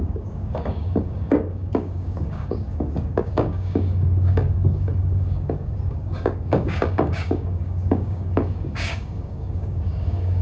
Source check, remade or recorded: remade